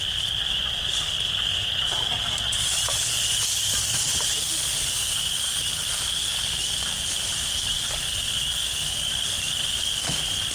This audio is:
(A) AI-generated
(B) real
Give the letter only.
B